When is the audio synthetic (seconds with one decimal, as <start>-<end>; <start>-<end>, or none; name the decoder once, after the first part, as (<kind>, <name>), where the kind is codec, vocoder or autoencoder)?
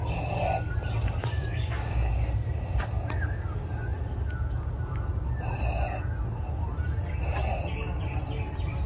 1.2-2.1 (codec, DAC)